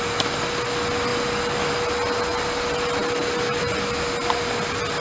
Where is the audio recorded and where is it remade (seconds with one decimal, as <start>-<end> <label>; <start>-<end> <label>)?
0.0-5.0 recorded